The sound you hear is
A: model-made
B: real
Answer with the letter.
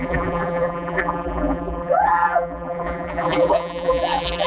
A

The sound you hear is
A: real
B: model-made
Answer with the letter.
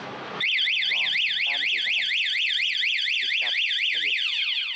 A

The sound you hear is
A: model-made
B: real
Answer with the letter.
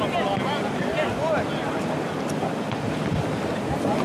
B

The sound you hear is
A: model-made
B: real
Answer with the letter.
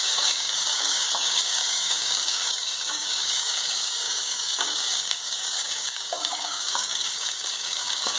A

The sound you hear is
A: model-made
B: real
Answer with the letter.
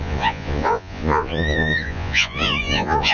A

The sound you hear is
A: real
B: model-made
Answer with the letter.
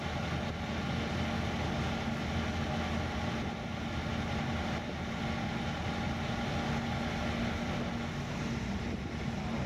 A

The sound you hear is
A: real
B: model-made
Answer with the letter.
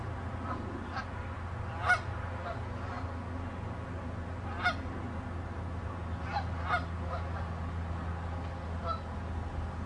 A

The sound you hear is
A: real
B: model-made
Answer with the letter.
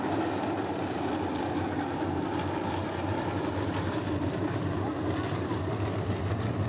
A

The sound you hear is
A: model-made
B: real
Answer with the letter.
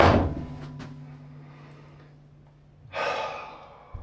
B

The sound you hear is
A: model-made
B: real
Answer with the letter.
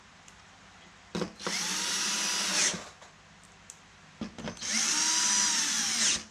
B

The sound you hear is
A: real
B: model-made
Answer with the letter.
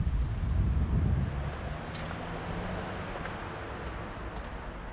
A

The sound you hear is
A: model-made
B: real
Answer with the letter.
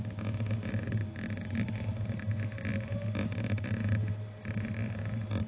B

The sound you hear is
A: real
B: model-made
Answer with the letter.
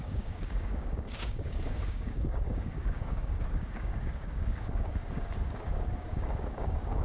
B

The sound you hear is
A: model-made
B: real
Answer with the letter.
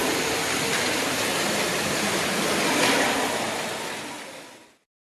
B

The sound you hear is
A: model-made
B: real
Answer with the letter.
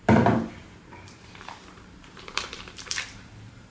A